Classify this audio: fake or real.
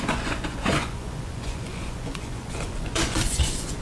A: fake